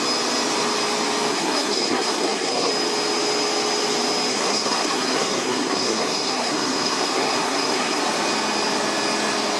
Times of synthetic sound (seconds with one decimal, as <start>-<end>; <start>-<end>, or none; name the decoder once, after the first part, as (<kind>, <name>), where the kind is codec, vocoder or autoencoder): 1.3-2.7 (codec, SNAC); 4.3-8.0